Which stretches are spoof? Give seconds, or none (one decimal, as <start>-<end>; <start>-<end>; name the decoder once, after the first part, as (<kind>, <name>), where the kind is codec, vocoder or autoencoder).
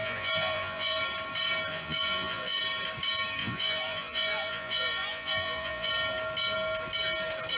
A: 0.0-1.0 (vocoder, Vocos); 1.7-2.6; 3.4-5.9